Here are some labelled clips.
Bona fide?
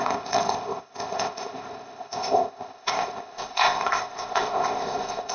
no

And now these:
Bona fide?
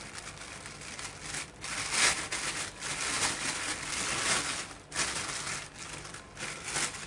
yes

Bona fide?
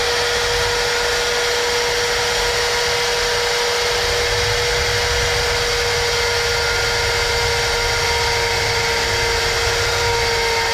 yes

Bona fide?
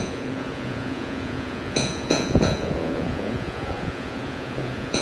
no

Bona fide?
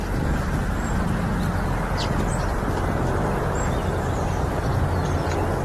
yes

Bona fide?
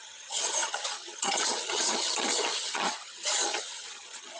no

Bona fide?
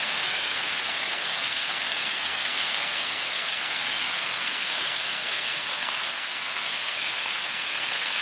no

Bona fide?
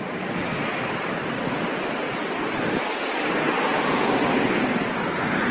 yes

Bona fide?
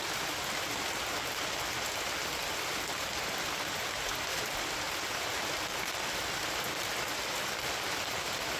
yes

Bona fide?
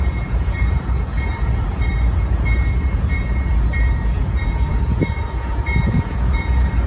no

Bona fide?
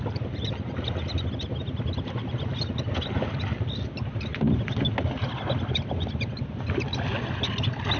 yes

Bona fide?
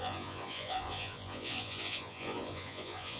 no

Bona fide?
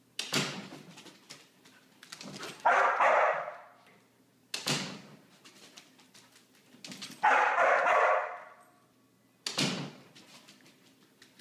yes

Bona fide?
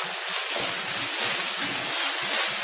yes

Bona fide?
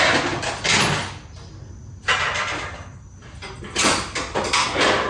yes